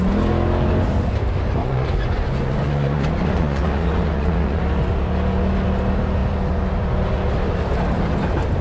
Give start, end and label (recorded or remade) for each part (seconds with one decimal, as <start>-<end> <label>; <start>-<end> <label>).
0.0-1.6 recorded; 1.6-4.6 remade; 4.6-8.6 recorded